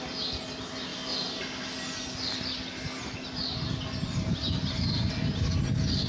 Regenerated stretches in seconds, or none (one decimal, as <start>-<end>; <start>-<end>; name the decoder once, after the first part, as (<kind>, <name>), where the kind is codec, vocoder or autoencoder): none